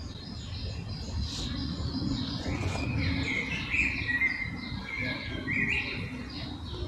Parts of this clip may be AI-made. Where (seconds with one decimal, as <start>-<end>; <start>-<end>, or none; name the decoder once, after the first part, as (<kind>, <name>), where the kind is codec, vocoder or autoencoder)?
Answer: 1.6-2.8 (vocoder, Vocos)